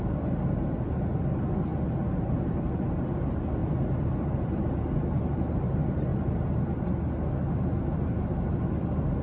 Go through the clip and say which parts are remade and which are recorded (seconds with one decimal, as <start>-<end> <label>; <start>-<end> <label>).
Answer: 0.0-3.6 recorded; 3.6-4.6 remade; 4.6-6.1 recorded; 6.1-6.9 remade; 6.9-9.2 recorded